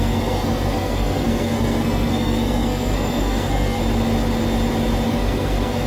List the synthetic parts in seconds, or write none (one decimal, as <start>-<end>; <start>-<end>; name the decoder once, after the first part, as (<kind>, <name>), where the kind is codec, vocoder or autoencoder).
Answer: 0.0-3.8 (codec, SNAC); 5.1-5.9